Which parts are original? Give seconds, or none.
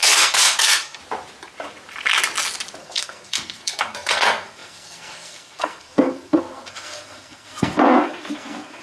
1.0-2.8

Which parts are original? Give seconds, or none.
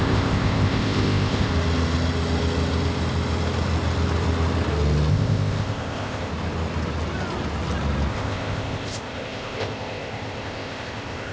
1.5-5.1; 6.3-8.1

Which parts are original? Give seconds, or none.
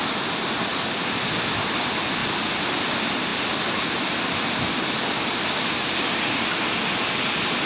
0.0-0.7; 1.3-2.2; 2.8-7.7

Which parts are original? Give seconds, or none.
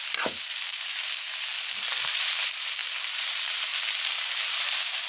1.5-2.0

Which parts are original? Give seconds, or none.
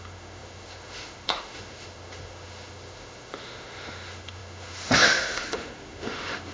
none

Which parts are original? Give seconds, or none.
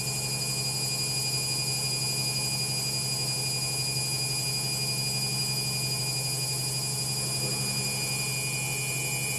0.0-9.4